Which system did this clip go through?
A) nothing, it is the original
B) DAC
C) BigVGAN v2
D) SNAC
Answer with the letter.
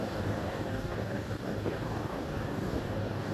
B